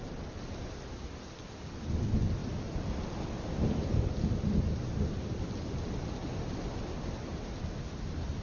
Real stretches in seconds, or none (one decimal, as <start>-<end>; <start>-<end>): 0.0-2.4; 4.7-8.4